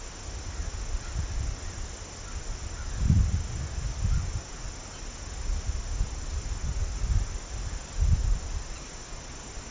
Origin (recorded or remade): recorded